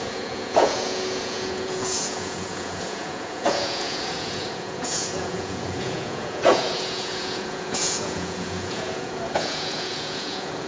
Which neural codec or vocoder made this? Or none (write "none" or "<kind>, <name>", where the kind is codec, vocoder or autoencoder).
vocoder, Vocos